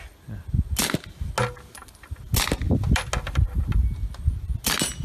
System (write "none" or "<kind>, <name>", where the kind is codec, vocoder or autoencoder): none